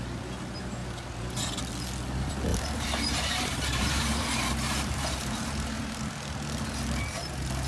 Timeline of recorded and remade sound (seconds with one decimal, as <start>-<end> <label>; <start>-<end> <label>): 0.0-2.5 recorded; 2.5-6.0 remade; 6.0-7.7 recorded